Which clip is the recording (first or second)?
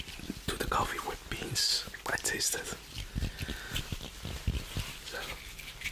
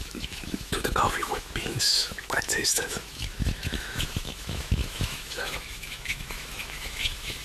first